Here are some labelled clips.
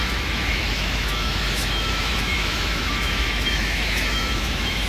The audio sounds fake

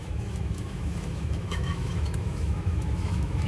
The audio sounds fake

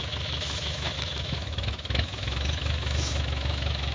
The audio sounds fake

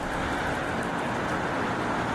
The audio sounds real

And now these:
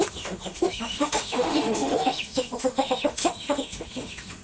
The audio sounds fake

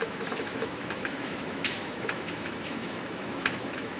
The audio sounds fake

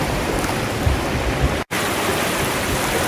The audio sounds real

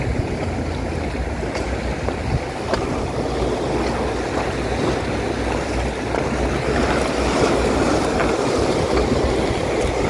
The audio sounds real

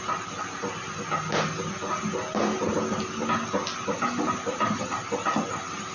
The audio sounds real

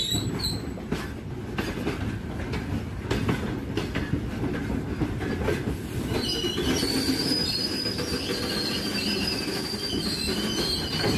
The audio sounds real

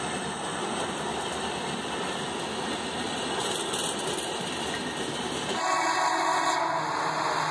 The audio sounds real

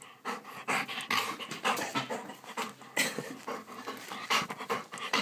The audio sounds real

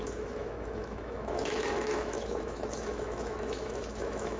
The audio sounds fake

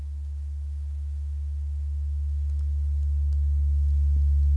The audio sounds real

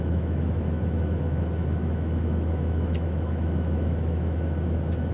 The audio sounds fake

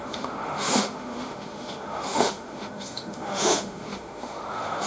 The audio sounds fake